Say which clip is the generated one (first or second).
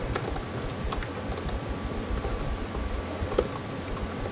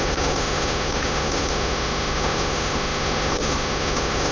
second